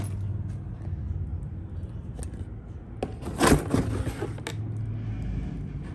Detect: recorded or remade recorded